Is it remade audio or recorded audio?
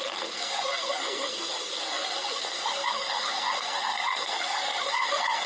remade